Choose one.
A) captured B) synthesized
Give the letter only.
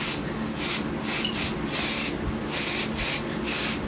A